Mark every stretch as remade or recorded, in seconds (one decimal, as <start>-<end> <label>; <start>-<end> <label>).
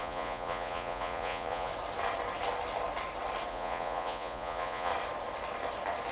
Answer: 0.0-1.7 remade; 1.7-3.5 recorded; 3.5-4.9 remade; 4.9-6.1 recorded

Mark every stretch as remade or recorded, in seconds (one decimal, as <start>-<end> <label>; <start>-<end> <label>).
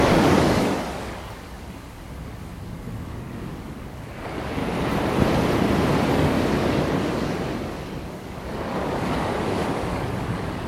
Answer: 0.0-4.6 remade; 4.6-6.1 recorded; 6.1-10.7 remade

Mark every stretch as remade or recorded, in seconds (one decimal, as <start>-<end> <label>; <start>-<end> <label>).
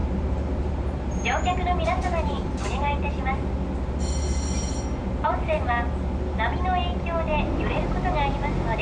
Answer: 0.0-3.1 remade; 3.1-5.0 recorded; 5.0-5.7 remade; 5.7-8.8 recorded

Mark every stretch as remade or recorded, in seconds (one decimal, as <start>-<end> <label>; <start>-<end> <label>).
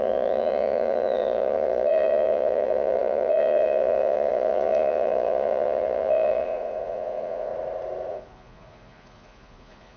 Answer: 0.0-7.5 remade; 7.5-8.1 recorded; 8.1-10.0 remade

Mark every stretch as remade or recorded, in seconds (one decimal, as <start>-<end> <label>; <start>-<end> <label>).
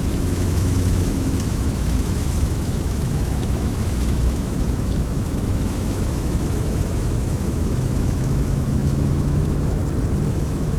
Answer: 0.0-9.8 remade; 9.8-10.3 recorded; 10.3-10.8 remade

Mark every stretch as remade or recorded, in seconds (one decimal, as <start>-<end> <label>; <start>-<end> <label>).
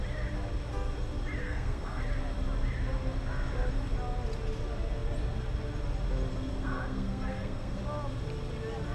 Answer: 0.0-1.4 recorded; 1.4-2.0 remade; 2.0-6.5 recorded; 6.5-7.8 remade; 7.8-8.9 recorded